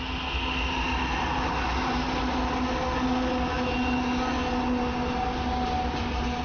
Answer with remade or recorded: recorded